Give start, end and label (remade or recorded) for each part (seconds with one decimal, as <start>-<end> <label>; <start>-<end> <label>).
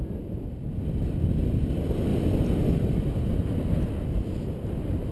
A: 0.0-5.1 recorded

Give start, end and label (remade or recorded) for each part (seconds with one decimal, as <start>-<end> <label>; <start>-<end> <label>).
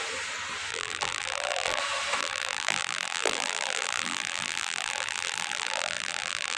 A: 0.0-0.7 recorded; 0.7-1.8 remade; 1.8-2.2 recorded; 2.2-6.6 remade